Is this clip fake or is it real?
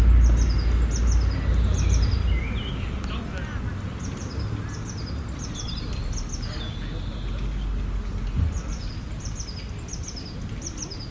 real